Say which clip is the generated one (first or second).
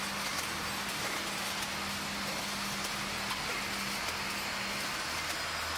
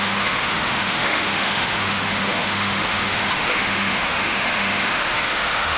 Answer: second